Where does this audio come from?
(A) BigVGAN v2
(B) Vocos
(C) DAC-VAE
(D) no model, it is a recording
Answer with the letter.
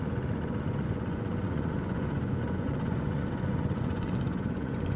B